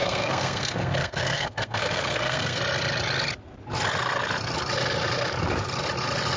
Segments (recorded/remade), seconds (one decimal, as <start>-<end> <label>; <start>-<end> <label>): 0.0-2.6 remade; 2.6-6.4 recorded